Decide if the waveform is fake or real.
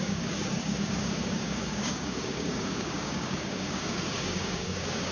fake